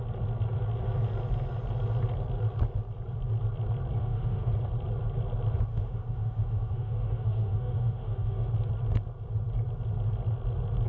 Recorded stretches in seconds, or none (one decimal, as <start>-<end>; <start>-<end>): 0.0-4.0; 4.5-5.7; 8.5-10.9